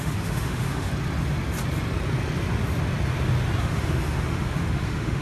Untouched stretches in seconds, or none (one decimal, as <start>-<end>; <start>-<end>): 0.9-3.6